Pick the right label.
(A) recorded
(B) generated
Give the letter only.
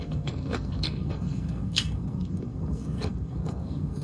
B